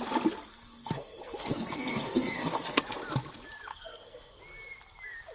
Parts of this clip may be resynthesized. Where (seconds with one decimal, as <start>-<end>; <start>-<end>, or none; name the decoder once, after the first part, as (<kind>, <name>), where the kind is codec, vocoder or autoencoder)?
0.5-2.8 (codec, SNAC); 3.7-4.4